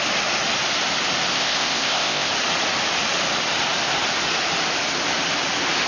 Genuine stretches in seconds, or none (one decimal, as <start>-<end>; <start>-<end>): 0.0-1.3; 2.3-5.9